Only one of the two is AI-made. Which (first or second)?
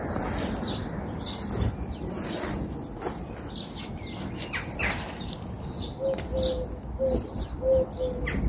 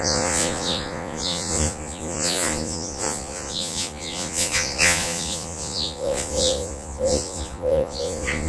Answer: second